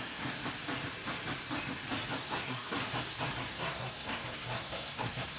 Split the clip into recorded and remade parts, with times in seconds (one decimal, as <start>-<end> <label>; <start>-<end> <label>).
0.0-0.4 remade; 0.4-2.2 recorded; 2.2-2.8 remade; 2.8-3.5 recorded; 3.5-5.4 remade